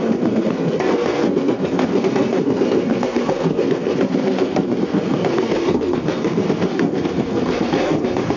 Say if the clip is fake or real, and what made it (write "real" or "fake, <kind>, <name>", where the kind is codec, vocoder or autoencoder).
fake, codec, SNAC